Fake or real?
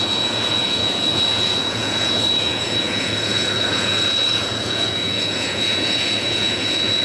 fake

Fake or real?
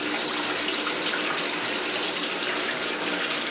real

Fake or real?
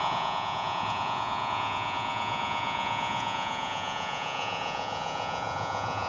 fake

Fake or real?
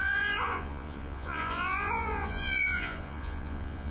fake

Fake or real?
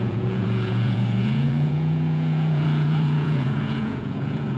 fake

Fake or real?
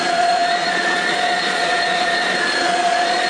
fake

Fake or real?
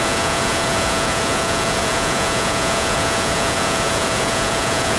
fake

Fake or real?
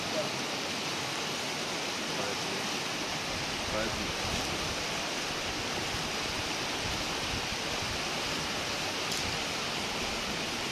real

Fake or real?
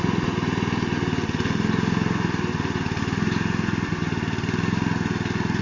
real